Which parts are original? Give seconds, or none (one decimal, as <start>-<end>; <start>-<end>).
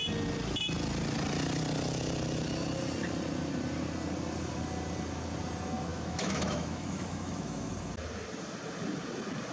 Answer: 0.0-5.9; 7.7-9.5